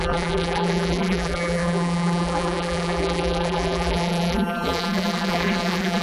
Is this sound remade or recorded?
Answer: remade